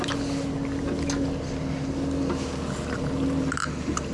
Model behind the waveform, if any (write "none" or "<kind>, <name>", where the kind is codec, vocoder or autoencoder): none